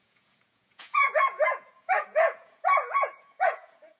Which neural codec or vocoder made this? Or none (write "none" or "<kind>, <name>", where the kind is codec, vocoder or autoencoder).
vocoder, Vocos